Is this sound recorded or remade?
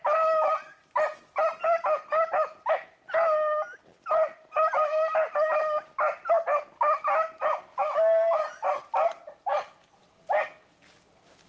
recorded